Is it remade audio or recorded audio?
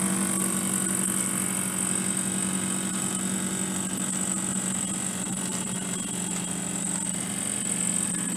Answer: recorded